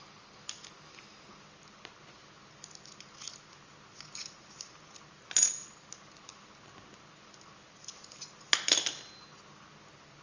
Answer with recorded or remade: recorded